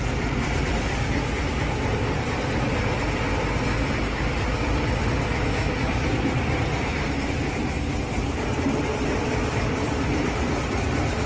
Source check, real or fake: real